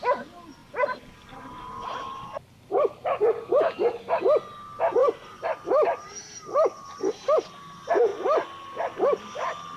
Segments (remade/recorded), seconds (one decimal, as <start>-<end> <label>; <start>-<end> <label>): 0.0-0.6 recorded; 0.6-3.6 remade; 3.6-5.0 recorded; 5.0-6.9 remade; 6.9-9.8 recorded